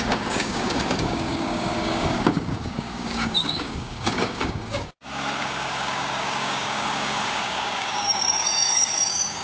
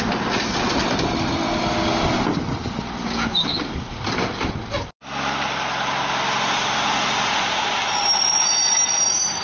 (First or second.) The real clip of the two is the second